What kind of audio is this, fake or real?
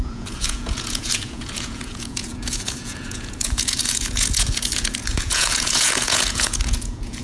fake